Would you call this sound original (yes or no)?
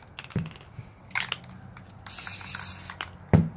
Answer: yes